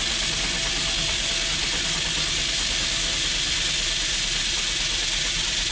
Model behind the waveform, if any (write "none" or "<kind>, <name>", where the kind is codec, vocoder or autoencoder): none